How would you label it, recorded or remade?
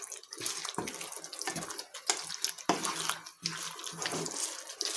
recorded